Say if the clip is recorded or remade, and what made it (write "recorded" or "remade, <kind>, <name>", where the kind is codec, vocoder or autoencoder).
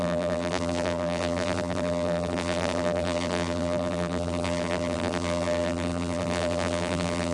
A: remade, vocoder, BigVGAN v2